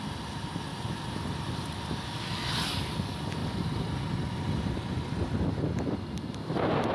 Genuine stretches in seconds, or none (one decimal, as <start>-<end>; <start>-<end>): 0.0-6.9